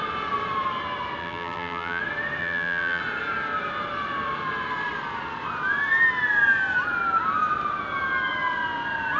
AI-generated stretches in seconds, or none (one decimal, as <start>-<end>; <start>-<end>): 1.2-2.0; 2.4-3.0